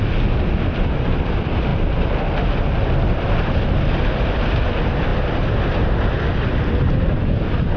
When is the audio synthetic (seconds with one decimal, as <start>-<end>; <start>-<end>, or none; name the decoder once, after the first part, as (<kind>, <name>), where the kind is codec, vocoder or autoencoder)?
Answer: none